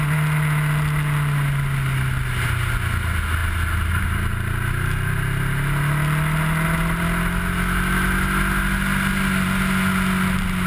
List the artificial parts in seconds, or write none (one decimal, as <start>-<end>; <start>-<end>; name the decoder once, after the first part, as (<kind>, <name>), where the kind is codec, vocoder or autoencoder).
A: none